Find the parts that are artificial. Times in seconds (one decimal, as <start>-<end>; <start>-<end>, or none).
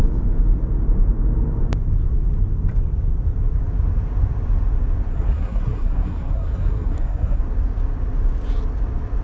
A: 5.1-7.4